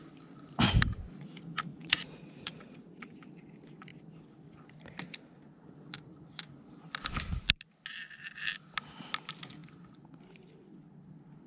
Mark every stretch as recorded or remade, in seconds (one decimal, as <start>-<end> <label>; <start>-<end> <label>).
0.0-1.7 recorded; 1.7-3.2 remade; 3.2-11.5 recorded